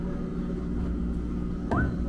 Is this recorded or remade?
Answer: recorded